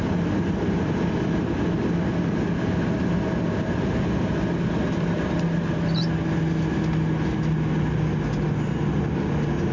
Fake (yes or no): no